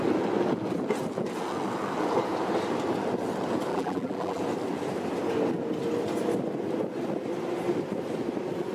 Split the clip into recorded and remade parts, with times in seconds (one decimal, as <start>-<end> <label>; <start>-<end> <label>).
0.0-3.7 recorded; 3.7-4.4 remade; 4.4-8.7 recorded